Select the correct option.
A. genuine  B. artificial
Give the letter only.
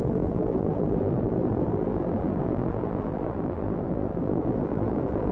B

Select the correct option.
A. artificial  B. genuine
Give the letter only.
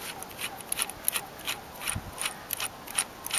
B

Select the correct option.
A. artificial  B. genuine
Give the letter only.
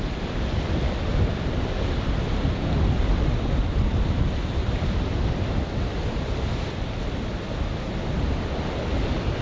B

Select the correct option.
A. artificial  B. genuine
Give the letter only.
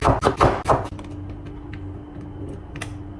B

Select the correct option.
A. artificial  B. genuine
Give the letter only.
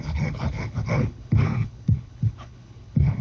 A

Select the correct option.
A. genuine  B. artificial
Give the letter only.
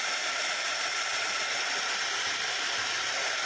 B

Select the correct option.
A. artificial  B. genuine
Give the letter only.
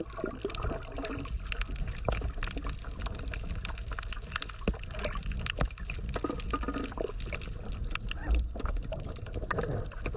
B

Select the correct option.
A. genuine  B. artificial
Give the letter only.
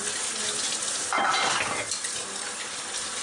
A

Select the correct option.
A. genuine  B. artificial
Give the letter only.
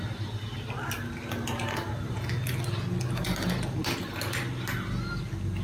A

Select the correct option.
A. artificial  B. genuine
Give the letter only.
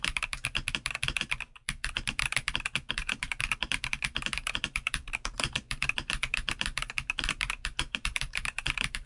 A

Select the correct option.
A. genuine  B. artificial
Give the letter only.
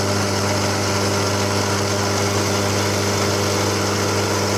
A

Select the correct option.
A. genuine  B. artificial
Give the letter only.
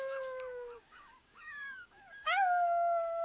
B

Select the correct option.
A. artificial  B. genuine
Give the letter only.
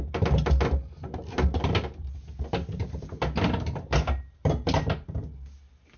B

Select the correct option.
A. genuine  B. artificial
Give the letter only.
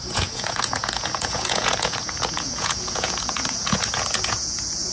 B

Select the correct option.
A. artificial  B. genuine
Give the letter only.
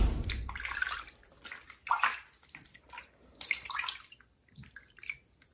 B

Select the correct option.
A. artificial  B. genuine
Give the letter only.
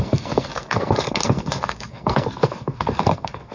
A